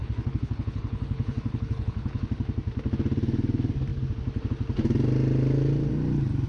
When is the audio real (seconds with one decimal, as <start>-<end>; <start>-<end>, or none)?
2.2-6.5